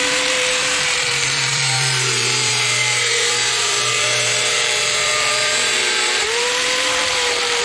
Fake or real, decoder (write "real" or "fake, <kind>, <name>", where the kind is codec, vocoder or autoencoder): fake, vocoder, BigVGAN v2